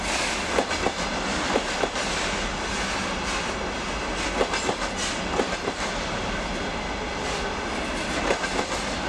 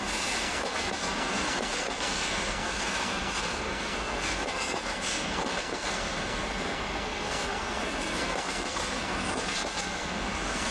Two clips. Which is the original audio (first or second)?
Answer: first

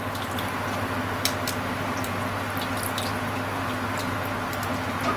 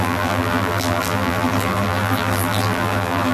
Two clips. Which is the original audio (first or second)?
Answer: first